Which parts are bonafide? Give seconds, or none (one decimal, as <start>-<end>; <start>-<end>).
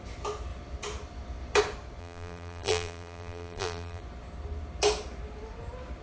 0.0-2.0; 4.0-6.0